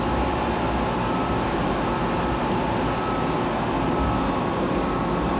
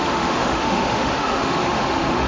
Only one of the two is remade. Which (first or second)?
second